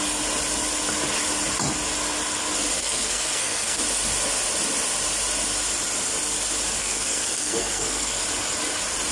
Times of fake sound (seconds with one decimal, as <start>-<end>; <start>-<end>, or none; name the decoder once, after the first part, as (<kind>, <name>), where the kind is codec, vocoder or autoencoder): 2.8-3.8 (codec, SNAC); 6.8-8.2

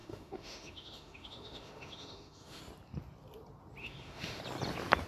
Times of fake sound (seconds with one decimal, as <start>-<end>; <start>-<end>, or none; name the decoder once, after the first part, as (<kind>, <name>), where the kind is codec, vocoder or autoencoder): 0.0-2.6 (autoencoder, DAC-VAE); 3.8-4.4

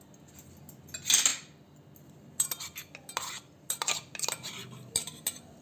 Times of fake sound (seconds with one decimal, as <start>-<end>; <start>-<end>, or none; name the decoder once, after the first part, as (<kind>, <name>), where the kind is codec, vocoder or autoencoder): none

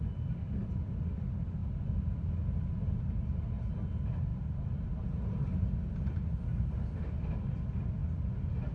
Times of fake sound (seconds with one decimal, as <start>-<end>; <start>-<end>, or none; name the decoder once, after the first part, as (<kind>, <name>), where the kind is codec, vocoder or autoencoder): 4.3-4.8 (vocoder, BigVGAN v2)

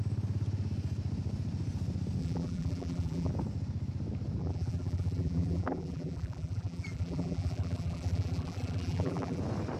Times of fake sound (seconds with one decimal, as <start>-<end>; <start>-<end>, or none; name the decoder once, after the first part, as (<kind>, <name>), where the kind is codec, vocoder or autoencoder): 2.2-3.3 (vocoder, BigVGAN v2); 4.4-9.4